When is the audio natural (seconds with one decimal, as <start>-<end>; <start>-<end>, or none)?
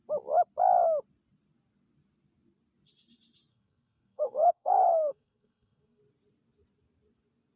0.0-3.5; 6.0-7.6